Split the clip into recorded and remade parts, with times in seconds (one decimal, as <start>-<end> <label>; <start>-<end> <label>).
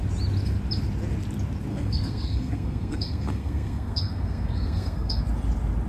0.0-1.7 recorded; 1.7-5.2 remade; 5.2-5.9 recorded